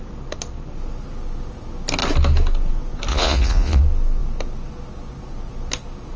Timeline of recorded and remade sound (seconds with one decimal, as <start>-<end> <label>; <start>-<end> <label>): 0.0-3.1 recorded; 3.1-3.8 remade; 3.8-6.2 recorded